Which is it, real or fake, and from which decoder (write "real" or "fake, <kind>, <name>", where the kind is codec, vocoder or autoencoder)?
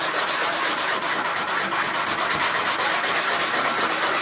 real